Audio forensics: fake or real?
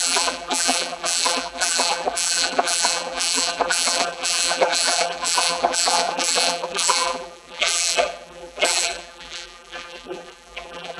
fake